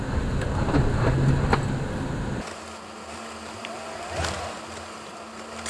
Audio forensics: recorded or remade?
recorded